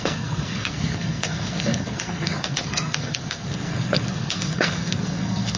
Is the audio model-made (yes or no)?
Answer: yes